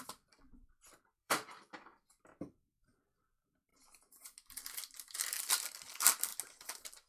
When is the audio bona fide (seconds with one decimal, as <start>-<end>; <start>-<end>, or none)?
3.7-5.5; 6.3-7.1

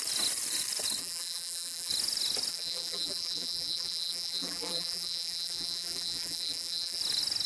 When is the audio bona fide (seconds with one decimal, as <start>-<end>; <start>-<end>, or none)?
0.0-1.0; 1.9-2.5; 7.0-7.5

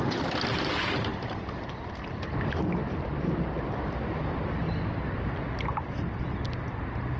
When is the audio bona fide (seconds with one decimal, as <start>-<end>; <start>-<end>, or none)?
0.0-1.1; 1.9-2.8; 5.2-7.2